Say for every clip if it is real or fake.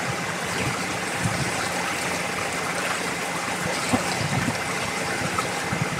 real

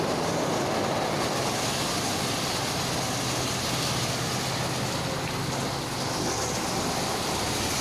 real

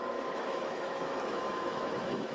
fake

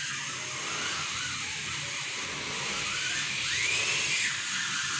real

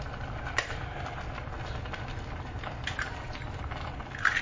real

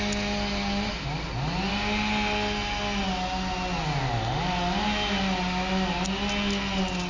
real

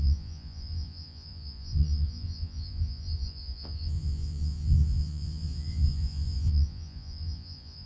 fake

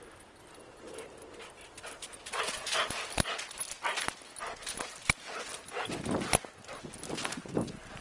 real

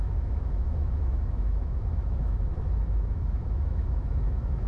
fake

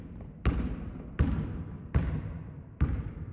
real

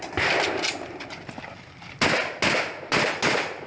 real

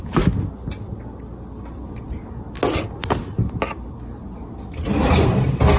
real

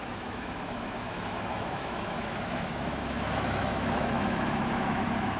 fake